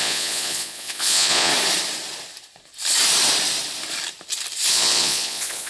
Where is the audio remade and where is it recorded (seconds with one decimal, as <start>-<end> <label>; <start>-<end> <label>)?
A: 0.0-1.5 remade; 1.5-4.7 recorded; 4.7-5.7 remade